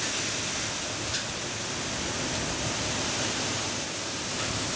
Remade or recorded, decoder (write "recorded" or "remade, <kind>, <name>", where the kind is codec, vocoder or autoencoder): remade, vocoder, BigVGAN v2